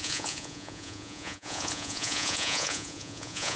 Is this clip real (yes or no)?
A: no